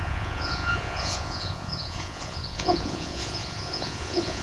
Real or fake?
fake